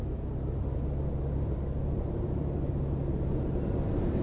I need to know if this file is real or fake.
real